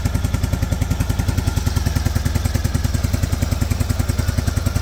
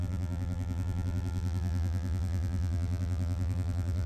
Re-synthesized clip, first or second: second